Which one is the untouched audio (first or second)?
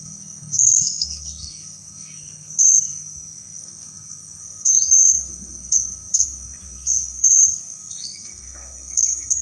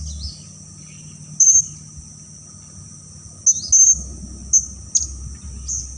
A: second